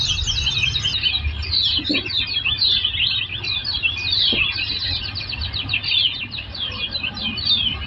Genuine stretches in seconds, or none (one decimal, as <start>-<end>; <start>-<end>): 0.0-3.6; 4.4-7.9